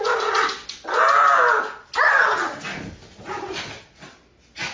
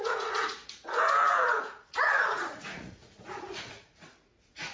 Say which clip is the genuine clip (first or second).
first